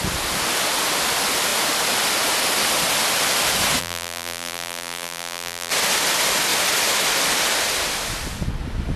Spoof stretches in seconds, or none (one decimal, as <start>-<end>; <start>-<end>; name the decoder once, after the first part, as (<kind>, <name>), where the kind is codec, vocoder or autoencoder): 3.8-5.7 (vocoder, BigVGAN v2)